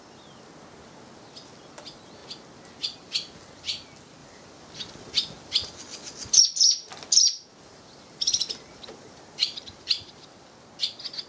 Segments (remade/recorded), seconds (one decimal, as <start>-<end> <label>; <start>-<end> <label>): 0.0-4.2 recorded; 4.2-6.4 remade; 6.4-7.5 recorded; 7.5-9.9 remade; 9.9-11.3 recorded